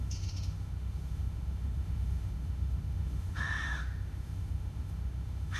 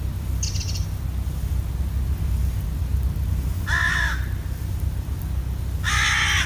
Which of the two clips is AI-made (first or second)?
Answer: first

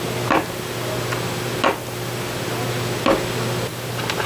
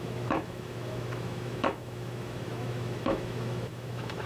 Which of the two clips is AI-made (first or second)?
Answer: second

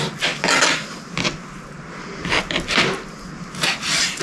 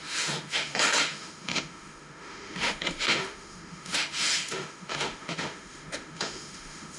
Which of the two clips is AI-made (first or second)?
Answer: second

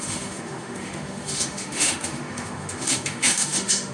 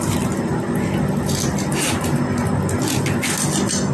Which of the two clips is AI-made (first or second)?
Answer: first